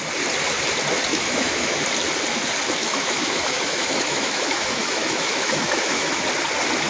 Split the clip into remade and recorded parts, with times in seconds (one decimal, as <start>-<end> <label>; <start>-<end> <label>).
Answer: 0.0-1.1 recorded; 1.1-1.8 remade; 1.8-2.8 recorded; 2.8-6.2 remade; 6.2-6.9 recorded